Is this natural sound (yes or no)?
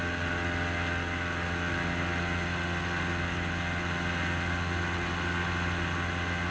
yes